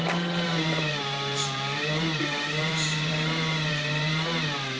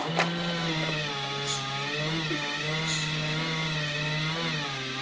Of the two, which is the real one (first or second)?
second